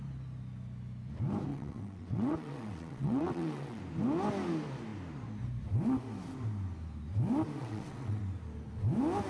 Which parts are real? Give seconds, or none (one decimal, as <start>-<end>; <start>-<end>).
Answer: 0.0-1.5; 3.8-7.6; 8.2-9.3